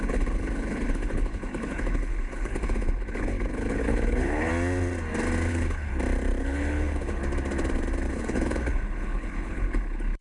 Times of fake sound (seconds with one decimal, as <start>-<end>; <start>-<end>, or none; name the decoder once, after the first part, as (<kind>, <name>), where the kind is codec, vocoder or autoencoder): 0.0-4.5 (codec, HILCodec); 5.5-5.9; 6.4-7.2; 8.1-10.2